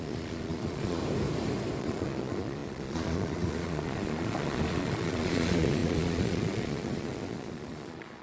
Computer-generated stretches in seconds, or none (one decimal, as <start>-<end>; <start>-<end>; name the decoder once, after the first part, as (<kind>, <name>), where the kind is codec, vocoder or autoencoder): 0.0-1.0 (vocoder, Vocos); 1.8-8.2

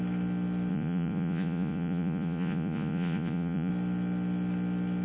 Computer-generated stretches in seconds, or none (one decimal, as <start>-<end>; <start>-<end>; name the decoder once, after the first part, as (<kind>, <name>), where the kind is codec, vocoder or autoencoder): 0.7-3.7 (vocoder, Vocos)